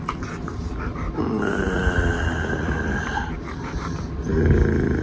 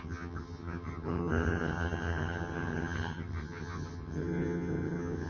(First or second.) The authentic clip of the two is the first